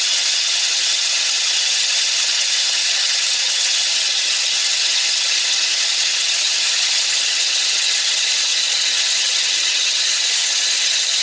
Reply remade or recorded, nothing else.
remade